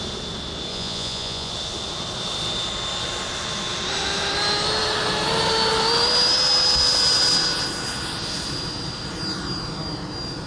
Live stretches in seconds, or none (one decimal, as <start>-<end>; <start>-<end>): 0.0-0.7; 1.5-10.5